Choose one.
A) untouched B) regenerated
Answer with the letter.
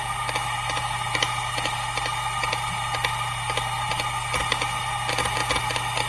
A